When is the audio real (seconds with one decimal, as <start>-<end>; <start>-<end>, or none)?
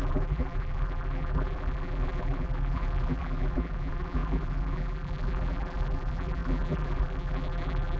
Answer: none